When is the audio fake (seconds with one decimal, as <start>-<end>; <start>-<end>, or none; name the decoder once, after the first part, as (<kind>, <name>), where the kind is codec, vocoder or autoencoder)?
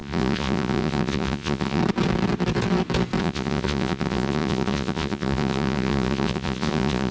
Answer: 0.0-1.8 (vocoder, Vocos); 3.2-7.1